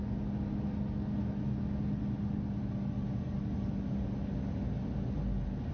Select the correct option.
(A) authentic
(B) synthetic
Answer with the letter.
A